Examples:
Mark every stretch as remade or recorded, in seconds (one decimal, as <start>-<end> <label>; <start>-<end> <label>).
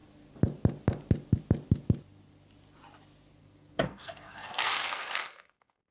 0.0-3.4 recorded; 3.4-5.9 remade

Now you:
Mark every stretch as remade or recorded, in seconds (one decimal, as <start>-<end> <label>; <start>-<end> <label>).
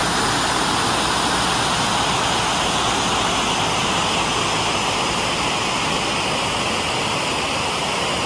0.0-8.3 recorded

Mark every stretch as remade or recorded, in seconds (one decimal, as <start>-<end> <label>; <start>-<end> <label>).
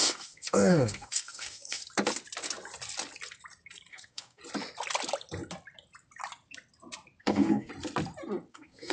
0.0-1.8 remade; 1.8-3.9 recorded; 3.9-4.4 remade; 4.4-7.2 recorded; 7.2-7.7 remade; 7.7-8.5 recorded; 8.5-8.9 remade